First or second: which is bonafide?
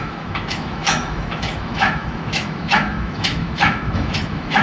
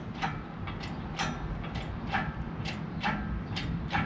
second